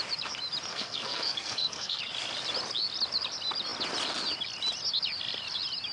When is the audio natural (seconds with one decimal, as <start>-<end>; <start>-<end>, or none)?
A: 0.0-0.7; 2.0-5.9